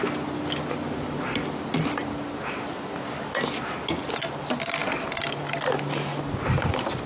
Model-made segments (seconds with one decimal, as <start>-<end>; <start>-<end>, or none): none